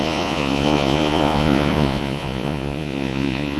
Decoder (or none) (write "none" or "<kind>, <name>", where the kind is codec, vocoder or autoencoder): vocoder, Vocos